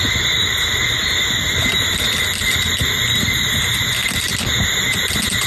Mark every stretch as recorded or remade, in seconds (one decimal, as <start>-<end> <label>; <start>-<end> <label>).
0.0-5.5 recorded